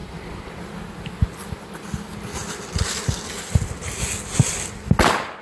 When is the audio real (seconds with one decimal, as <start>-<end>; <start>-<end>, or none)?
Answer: 0.5-5.4